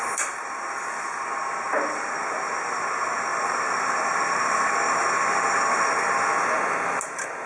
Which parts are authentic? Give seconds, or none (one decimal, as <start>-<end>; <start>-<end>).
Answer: 0.0-7.5